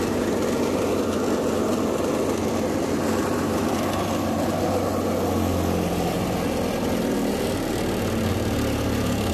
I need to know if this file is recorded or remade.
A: recorded